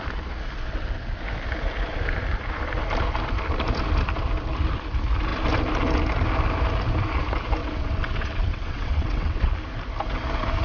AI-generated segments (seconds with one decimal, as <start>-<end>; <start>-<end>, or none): 7.6-9.5